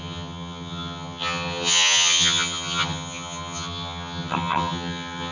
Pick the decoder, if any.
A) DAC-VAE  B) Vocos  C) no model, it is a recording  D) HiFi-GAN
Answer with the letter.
D